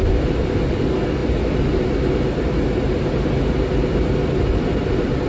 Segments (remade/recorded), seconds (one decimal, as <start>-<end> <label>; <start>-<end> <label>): 0.0-5.3 recorded